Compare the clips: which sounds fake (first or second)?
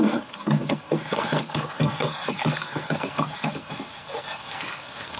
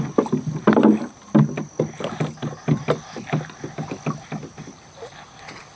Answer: first